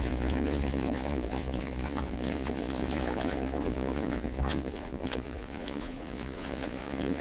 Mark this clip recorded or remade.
remade